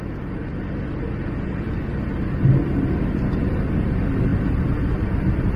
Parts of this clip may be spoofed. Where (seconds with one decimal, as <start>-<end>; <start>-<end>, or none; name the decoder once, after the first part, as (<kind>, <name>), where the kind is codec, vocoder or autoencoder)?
4.3-5.6 (vocoder, BigVGAN v2)